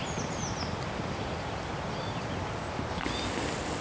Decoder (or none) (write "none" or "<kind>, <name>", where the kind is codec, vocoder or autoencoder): none